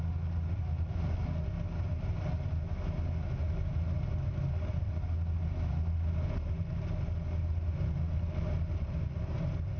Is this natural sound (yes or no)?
yes